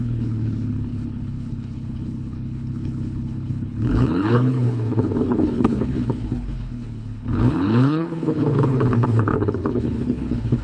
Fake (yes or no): yes